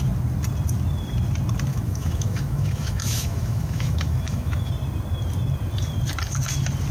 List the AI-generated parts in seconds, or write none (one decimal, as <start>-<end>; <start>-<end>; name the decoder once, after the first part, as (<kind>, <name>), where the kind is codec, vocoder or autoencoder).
1.7-4.7 (autoencoder, DAC-VAE)